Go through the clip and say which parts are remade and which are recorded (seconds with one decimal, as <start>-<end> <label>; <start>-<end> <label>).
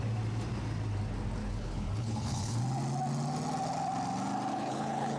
0.0-1.4 recorded; 1.4-2.6 remade; 2.6-4.5 recorded; 4.5-5.2 remade